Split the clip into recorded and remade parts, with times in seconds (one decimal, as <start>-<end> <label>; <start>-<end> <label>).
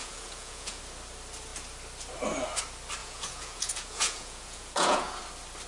0.0-0.8 remade; 0.8-3.0 recorded; 3.0-5.2 remade; 5.2-5.7 recorded